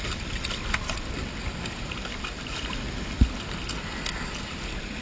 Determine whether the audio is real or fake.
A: real